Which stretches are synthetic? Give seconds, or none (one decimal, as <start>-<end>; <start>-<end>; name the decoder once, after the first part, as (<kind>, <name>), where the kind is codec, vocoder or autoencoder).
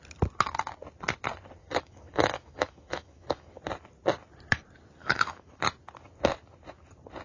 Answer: 1.6-3.6 (autoencoder, DAC-VAE); 5.0-5.6